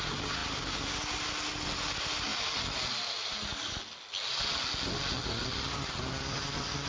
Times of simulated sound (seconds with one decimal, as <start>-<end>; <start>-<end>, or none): none